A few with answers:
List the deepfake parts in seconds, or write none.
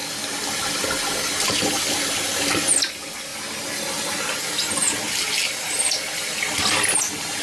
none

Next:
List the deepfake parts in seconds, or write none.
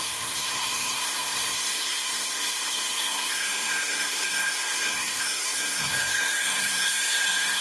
0.0-7.6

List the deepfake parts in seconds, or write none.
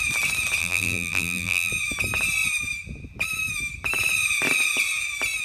0.6-1.7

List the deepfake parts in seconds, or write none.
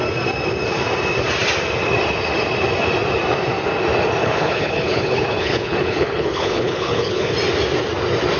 4.2-7.3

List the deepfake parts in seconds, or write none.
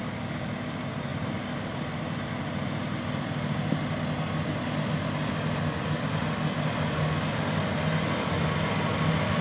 none